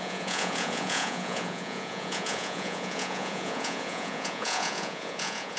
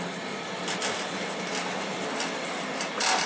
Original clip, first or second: second